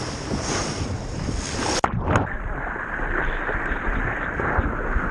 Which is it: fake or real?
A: real